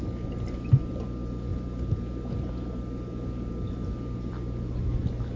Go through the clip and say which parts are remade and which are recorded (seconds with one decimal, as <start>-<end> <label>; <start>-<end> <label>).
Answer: 0.0-5.4 recorded